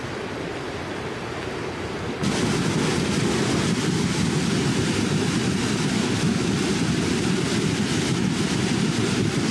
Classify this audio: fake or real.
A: real